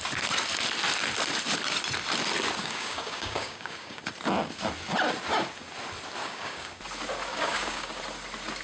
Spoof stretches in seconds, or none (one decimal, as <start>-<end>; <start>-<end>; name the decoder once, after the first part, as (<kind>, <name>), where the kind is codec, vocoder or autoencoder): 2.6-4.0 (codec, DAC); 6.2-6.8; 7.3-8.0